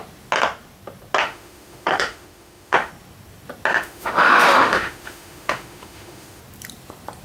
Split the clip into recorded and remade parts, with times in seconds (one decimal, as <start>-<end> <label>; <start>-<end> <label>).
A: 0.0-1.2 recorded; 1.2-2.9 remade; 2.9-3.7 recorded; 3.7-6.4 remade; 6.4-7.2 recorded